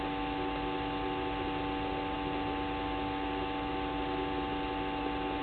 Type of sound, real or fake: real